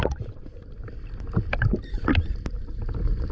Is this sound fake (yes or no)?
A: no